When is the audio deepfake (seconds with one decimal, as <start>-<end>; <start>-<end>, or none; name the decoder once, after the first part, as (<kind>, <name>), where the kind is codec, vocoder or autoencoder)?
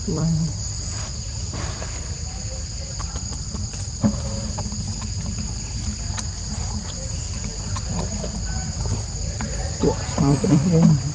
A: 0.0-5.9 (vocoder, BigVGAN v2); 6.9-11.1